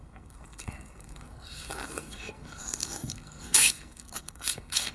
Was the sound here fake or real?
fake